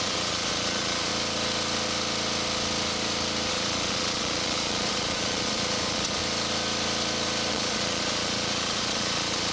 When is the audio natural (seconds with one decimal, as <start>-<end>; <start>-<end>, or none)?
1.1-3.5; 6.2-7.5